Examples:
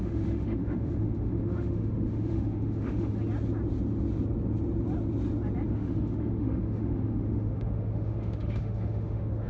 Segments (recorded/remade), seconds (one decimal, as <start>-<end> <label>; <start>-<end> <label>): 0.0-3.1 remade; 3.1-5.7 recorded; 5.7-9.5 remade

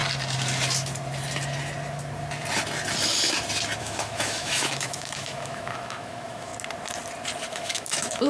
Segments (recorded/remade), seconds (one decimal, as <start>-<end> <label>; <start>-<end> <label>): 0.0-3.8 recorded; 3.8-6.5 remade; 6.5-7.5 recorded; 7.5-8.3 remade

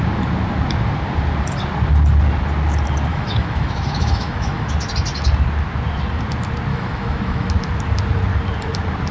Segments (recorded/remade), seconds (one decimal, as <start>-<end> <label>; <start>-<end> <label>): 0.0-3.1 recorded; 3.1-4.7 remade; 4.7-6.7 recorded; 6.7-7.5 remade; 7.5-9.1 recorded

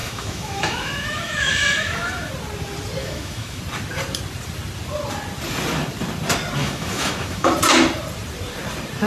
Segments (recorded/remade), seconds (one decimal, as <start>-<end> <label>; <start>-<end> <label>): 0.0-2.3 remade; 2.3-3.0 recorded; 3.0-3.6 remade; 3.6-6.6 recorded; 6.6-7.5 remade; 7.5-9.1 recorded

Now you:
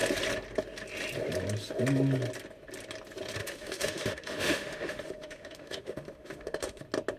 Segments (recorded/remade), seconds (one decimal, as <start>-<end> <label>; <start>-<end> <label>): 0.0-3.4 recorded; 3.4-6.8 remade; 6.8-7.2 recorded